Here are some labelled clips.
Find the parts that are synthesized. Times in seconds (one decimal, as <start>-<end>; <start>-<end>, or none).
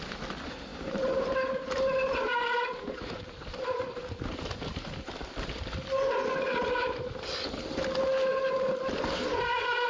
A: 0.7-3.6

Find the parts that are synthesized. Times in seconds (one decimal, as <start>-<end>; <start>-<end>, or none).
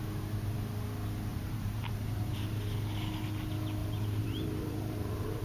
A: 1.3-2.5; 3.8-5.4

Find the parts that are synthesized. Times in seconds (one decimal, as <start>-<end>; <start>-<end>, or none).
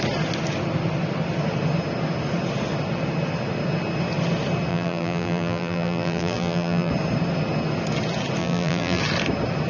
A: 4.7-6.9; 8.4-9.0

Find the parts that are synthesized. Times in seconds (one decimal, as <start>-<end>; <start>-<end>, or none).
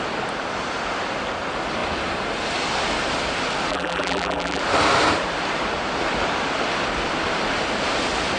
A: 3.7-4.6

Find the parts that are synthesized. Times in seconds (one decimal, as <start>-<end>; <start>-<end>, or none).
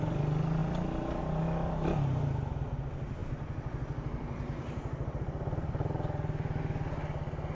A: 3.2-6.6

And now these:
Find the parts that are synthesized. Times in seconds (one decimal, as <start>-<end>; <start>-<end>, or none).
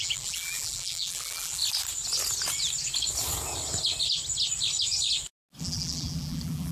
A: 0.0-1.6; 5.6-6.7